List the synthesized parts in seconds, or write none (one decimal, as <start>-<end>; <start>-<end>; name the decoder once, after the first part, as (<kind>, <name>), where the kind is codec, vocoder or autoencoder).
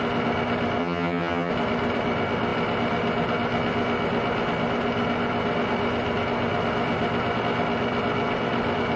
0.8-1.5 (vocoder, HiFi-GAN)